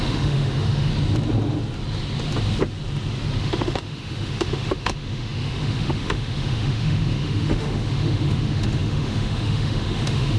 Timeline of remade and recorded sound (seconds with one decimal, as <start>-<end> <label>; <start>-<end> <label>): 0.0-0.9 remade; 0.9-3.4 recorded; 3.4-10.4 remade